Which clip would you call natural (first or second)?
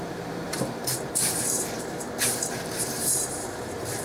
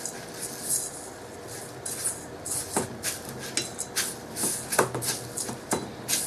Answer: second